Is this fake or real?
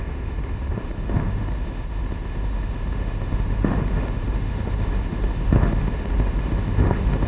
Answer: fake